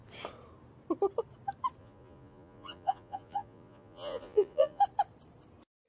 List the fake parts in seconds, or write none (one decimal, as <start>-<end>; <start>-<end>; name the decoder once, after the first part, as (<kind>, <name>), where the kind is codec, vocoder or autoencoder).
1.8-4.8 (vocoder, Vocos)